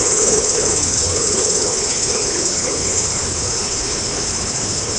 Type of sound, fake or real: fake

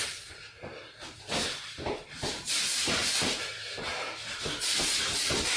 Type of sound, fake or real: fake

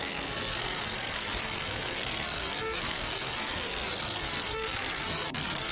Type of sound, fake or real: fake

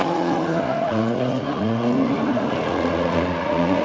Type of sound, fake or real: fake